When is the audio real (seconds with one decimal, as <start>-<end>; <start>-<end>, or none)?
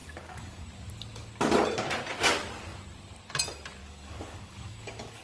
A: 0.7-3.8